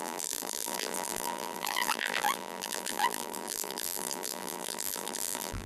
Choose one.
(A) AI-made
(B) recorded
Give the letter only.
A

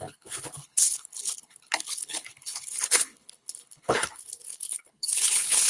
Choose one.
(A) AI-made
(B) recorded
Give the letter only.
A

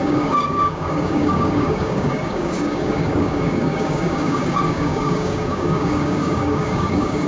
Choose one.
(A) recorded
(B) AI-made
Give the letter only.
B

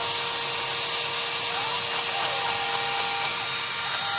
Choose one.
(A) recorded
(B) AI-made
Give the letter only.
A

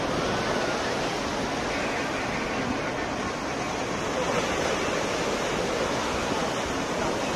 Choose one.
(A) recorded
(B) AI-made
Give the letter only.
A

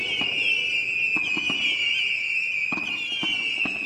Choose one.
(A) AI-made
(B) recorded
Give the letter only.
B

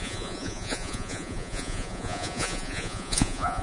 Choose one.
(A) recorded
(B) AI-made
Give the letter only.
B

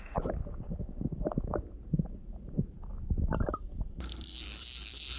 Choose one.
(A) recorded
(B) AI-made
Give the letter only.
B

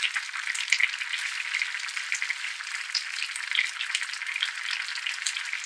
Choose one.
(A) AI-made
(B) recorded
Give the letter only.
B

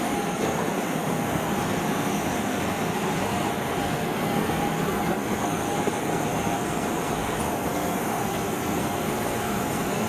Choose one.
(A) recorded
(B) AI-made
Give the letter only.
B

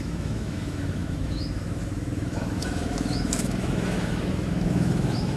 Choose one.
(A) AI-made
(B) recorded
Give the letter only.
A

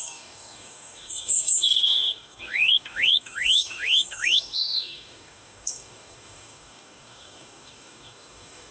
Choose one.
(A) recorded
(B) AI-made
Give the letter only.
B